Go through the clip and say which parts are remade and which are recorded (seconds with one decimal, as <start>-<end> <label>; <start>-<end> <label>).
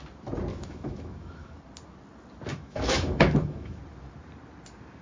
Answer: 0.0-0.5 recorded; 0.5-1.6 remade; 1.6-2.5 recorded; 2.5-3.8 remade; 3.8-5.0 recorded